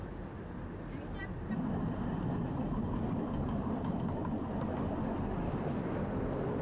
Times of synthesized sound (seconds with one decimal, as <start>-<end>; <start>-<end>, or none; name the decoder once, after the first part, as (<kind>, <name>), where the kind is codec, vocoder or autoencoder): none